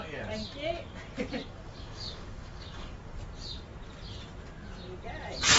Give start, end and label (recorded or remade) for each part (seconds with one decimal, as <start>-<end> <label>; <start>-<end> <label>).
0.0-1.4 recorded; 1.4-3.2 remade; 3.2-5.6 recorded